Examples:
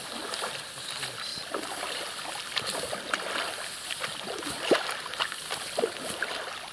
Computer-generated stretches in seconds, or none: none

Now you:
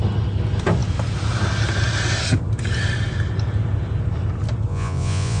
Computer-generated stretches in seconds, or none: 4.7-5.4 (vocoder, Vocos)

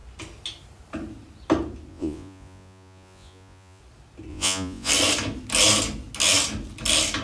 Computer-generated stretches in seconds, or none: 1.9-3.8 (vocoder, Vocos); 4.3-4.9

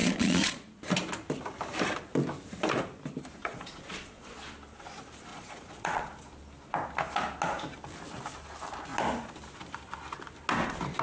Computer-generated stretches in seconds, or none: 0.0-0.8 (vocoder, Vocos); 3.4-4.4; 5.3-6.0

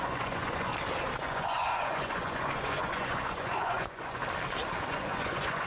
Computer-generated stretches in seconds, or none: 0.0-0.7 (vocoder, Vocos); 1.2-4.2; 4.8-5.7

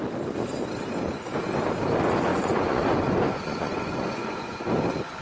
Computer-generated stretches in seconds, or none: 2.3-4.7 (vocoder, Vocos)

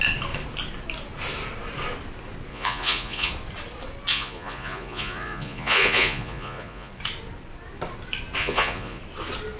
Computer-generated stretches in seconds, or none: 2.5-3.3 (vocoder, Vocos); 4.1-6.9; 8.4-9.0

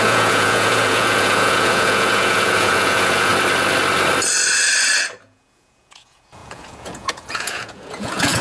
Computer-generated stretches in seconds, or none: 0.0-3.3 (vocoder, Vocos); 5.2-8.4